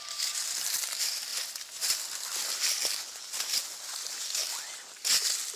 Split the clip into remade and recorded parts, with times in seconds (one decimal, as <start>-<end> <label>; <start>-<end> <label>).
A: 0.0-5.6 recorded